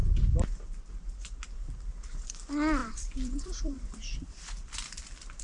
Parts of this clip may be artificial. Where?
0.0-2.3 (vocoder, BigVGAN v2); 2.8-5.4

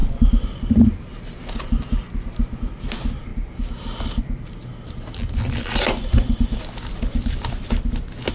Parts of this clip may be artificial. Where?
none